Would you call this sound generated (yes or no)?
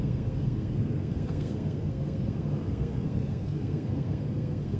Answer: yes